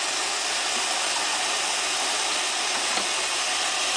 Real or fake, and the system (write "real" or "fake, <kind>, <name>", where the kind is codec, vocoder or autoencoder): real